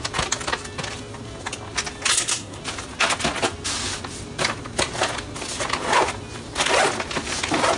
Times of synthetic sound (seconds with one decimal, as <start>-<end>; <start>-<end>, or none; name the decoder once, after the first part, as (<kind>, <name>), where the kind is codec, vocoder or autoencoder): 2.1-2.6 (codec, SNAC)